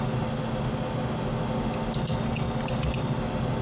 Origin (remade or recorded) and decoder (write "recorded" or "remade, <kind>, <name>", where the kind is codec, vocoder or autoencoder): recorded